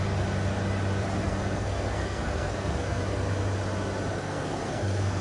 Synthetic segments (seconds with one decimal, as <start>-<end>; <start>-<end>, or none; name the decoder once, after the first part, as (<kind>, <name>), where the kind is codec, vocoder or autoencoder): 1.2-3.0 (codec, SNAC); 4.1-5.2